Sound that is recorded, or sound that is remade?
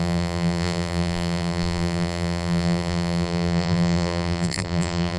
remade